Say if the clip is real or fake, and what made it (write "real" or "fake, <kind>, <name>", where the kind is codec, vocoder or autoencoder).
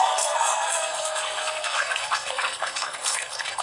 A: fake, codec, SNAC